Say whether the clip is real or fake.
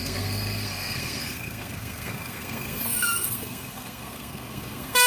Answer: fake